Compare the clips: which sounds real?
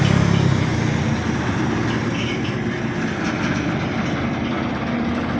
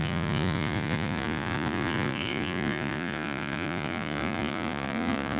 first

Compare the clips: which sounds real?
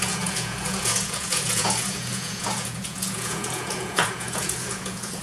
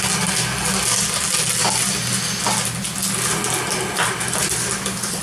second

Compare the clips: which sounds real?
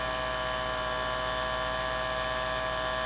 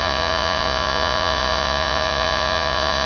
first